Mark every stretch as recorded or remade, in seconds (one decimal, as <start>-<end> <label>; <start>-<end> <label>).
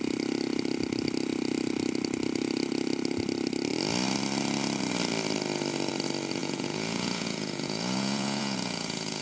0.0-6.4 recorded; 6.4-9.2 remade